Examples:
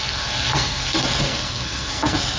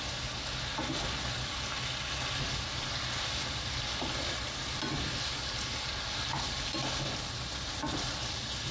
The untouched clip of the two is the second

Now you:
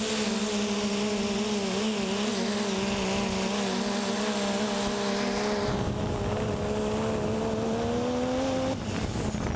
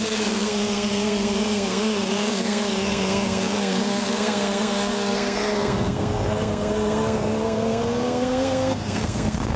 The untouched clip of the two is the first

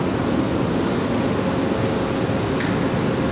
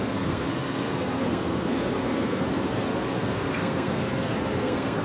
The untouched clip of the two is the first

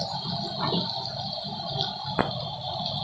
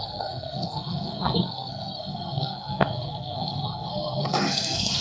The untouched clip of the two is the first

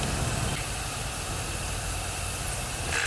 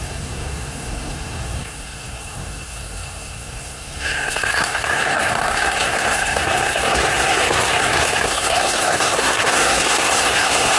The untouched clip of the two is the first